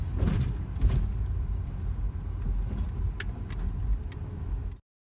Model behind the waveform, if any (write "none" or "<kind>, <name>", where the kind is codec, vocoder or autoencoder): none